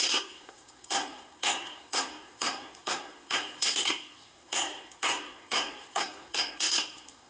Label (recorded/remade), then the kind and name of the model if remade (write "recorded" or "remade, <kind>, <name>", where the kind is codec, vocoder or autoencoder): remade, codec, SNAC